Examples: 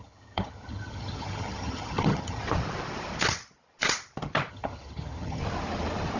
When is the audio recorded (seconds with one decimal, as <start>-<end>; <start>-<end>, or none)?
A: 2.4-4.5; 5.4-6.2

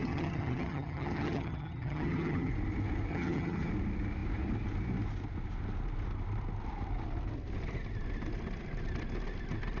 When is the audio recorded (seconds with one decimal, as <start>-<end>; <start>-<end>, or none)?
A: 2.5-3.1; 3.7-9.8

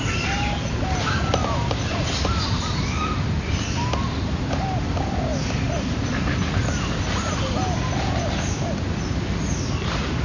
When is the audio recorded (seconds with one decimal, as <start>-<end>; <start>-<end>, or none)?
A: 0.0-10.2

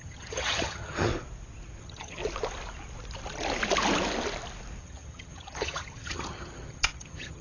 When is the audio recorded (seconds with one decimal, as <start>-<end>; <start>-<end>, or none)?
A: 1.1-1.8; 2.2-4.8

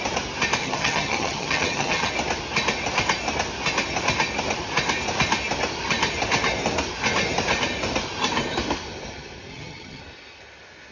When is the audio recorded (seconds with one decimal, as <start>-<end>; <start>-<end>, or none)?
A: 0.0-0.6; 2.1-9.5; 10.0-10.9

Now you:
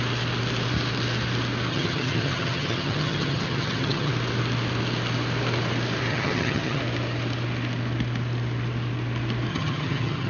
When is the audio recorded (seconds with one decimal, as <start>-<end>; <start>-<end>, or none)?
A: 0.0-1.7; 4.1-6.1; 6.8-9.5

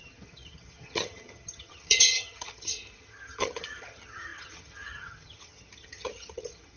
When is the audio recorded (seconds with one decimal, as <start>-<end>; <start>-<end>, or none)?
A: none